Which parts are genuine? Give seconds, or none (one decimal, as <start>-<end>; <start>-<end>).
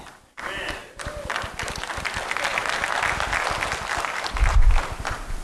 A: 0.0-0.8; 1.9-5.4